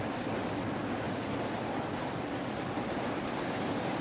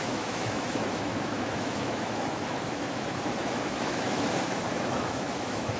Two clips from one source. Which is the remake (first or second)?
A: second